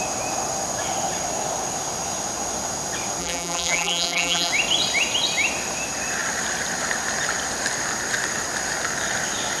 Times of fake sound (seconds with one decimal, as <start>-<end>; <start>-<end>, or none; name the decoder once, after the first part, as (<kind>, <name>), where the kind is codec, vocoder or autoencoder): 3.2-4.5 (vocoder, BigVGAN v2)